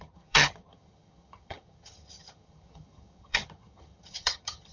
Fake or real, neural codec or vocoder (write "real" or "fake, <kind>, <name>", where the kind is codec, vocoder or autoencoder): fake, vocoder, HiFi-GAN